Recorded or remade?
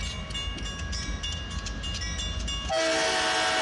recorded